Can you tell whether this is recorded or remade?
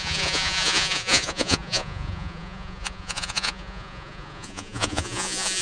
remade